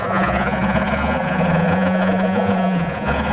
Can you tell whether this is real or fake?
fake